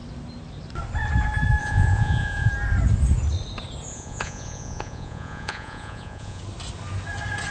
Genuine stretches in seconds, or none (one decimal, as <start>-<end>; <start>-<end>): 0.0-1.6; 2.5-3.9; 6.4-7.5